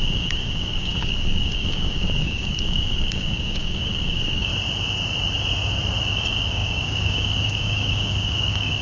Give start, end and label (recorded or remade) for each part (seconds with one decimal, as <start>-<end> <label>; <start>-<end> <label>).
0.0-4.5 remade; 4.5-6.0 recorded; 6.0-8.8 remade